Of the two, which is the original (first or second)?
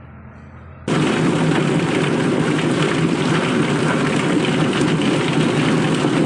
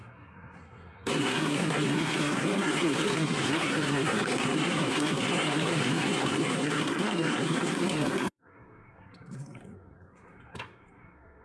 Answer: first